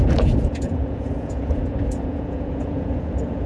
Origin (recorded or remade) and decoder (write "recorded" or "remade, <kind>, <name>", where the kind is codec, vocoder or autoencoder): remade, vocoder, Vocos